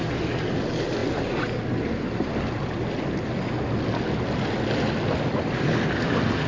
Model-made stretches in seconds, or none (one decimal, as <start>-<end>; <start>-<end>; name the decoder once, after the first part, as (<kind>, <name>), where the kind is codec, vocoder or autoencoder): none